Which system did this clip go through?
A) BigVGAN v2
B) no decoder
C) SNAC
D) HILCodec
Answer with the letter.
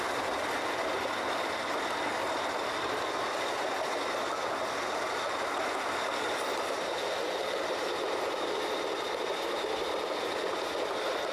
B